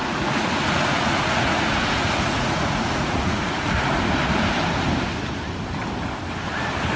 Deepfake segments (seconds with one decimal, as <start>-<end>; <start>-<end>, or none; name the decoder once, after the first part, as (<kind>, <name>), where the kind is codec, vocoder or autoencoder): 0.0-4.2 (vocoder, Vocos)